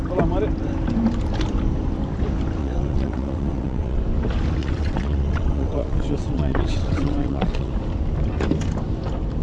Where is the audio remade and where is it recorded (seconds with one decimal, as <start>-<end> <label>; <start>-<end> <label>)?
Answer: 0.0-2.6 recorded; 2.6-4.0 remade; 4.0-4.6 recorded; 4.6-7.7 remade; 7.7-9.4 recorded